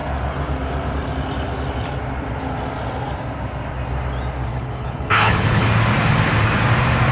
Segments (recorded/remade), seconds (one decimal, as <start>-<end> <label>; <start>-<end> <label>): 0.0-4.5 recorded; 4.5-5.7 remade; 5.7-7.1 recorded